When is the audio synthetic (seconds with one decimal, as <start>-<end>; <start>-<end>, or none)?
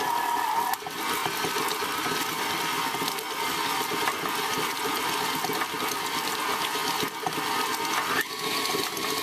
none